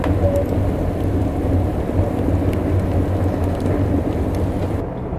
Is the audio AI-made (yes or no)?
no